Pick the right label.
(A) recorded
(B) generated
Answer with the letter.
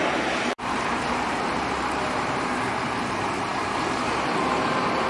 B